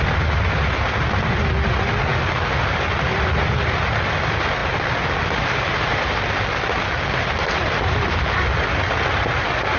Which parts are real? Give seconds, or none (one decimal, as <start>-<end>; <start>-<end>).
0.0-9.8